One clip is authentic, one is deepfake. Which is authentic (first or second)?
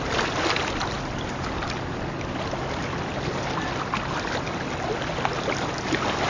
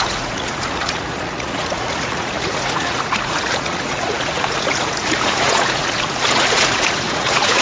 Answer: first